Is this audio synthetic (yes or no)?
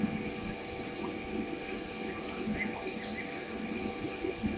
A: no